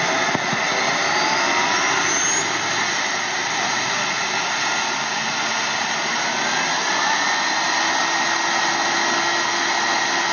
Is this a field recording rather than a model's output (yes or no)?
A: yes